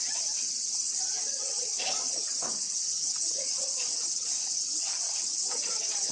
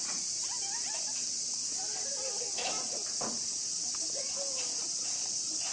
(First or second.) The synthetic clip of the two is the first